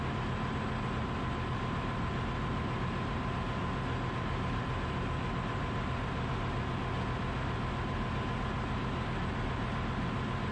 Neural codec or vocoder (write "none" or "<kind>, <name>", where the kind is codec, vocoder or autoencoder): none